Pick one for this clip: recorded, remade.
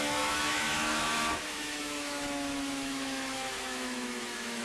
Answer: remade